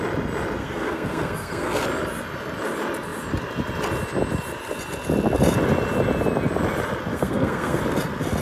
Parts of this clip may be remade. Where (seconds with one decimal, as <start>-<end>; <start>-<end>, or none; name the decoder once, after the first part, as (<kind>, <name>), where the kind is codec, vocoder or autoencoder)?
0.6-1.8 (codec, SNAC); 7.1-7.8